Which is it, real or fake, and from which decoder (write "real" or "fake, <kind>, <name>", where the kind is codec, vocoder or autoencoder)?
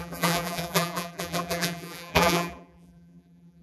fake, vocoder, BigVGAN v2